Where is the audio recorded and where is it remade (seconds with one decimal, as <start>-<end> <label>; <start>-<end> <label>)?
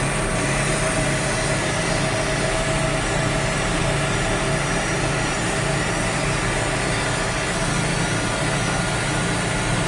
0.0-9.9 recorded